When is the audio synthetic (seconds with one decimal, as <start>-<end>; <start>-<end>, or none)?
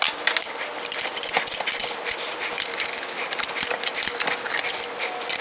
none